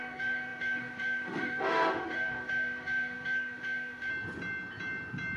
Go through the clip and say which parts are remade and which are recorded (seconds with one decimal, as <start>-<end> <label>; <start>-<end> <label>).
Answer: 0.0-4.1 remade; 4.1-5.4 recorded